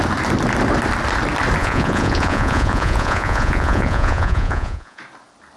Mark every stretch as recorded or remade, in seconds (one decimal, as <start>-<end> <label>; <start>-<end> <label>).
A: 0.0-1.6 recorded; 1.6-5.0 remade; 5.0-5.6 recorded